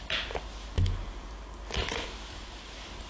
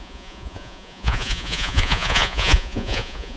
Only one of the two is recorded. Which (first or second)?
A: first